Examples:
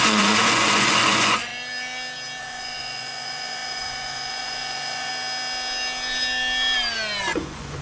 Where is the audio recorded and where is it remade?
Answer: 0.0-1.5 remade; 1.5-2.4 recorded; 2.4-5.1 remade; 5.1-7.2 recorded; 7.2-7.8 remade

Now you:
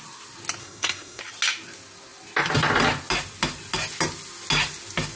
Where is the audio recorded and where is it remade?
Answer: 0.0-0.6 recorded; 0.6-1.2 remade; 1.2-5.2 recorded